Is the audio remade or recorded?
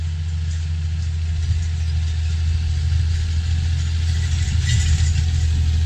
recorded